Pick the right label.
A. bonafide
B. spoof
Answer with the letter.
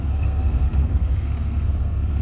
B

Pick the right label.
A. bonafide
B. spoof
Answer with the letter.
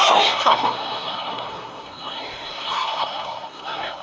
B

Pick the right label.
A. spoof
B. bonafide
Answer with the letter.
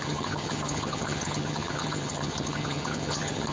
A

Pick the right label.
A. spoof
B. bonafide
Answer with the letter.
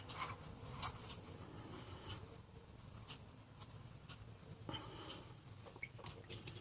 B